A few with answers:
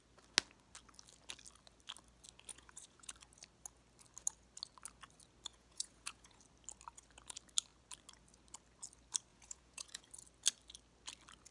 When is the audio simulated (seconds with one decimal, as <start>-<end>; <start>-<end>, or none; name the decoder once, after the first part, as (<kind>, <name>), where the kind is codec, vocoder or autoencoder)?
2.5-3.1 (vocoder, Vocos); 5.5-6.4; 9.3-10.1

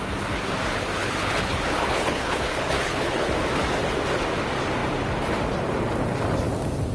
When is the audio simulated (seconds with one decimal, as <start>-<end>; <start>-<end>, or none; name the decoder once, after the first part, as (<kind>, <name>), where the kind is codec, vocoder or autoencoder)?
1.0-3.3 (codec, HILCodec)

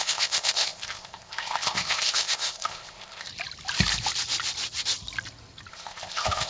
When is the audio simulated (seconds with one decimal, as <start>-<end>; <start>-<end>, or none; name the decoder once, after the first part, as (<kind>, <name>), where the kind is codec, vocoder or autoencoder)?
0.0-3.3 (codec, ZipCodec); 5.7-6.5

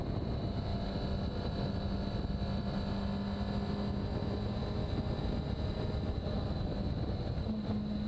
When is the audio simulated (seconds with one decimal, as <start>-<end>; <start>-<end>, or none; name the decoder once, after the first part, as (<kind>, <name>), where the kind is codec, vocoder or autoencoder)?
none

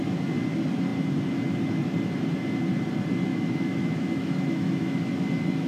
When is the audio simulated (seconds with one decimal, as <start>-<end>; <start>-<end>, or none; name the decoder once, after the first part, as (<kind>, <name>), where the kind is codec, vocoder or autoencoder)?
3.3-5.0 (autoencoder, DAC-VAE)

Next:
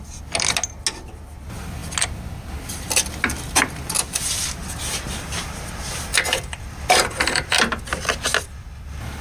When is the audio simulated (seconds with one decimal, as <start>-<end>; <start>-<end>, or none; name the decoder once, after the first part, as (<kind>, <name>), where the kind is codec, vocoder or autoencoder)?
none

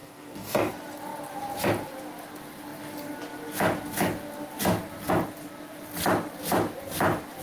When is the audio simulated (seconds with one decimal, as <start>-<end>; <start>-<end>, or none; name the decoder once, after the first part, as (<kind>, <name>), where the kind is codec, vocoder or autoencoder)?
0.0-0.7 (codec, DAC)

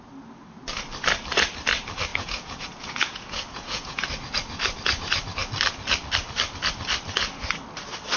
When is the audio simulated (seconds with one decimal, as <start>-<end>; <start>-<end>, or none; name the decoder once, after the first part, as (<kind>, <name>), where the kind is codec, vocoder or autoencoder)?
2.1-4.1 (vocoder, Vocos)